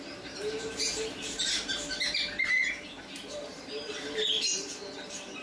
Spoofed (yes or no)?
yes